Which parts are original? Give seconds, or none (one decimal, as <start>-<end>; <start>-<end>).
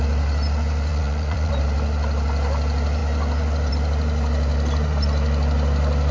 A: 0.0-0.9; 1.5-6.1